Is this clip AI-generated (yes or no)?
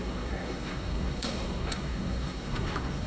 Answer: yes